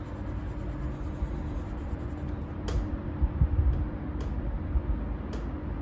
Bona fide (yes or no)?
yes